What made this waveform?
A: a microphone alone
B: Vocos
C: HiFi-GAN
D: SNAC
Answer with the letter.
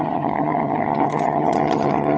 C